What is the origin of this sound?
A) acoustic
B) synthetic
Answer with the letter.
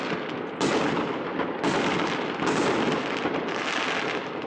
A